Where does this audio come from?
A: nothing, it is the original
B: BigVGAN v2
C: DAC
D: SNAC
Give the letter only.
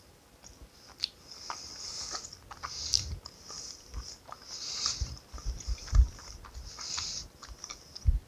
A